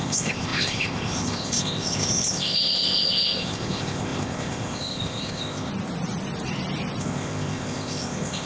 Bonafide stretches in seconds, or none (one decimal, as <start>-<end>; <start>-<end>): 5.7-7.0